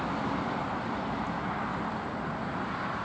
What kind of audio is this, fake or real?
real